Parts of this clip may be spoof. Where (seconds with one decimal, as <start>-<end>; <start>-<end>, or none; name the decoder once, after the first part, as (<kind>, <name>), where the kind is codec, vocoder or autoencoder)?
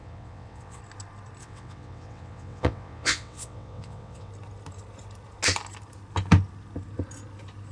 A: 0.0-0.8 (vocoder, WaveNeXt); 1.4-4.3